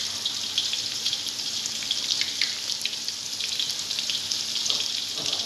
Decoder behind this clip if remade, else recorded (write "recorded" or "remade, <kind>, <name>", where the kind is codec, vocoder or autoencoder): recorded